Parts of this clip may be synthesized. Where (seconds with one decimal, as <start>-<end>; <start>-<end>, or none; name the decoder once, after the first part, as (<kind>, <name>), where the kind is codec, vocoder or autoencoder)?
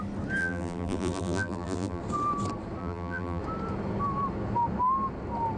0.4-2.0 (vocoder, BigVGAN v2); 2.8-3.4